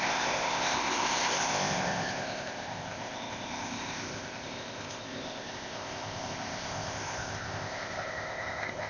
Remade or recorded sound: remade